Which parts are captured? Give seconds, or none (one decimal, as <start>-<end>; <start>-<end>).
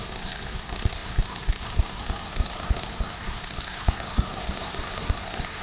none